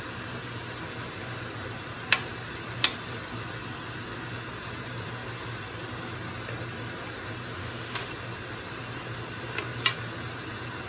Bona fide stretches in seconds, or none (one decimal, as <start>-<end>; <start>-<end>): 0.0-7.6; 8.1-10.9